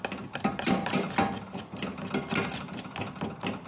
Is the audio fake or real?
real